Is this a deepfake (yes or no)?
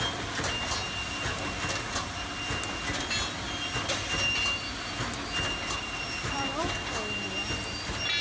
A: no